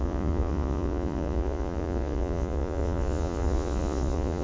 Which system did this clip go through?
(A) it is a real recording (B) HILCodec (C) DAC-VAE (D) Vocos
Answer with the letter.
D